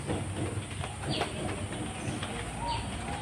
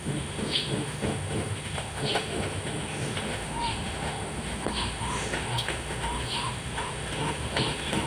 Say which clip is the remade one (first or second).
second